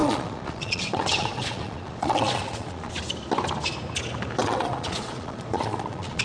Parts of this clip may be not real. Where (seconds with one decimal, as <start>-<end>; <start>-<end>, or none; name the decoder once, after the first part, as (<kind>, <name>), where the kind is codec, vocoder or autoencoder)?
0.0-2.9 (vocoder, Vocos); 4.4-6.2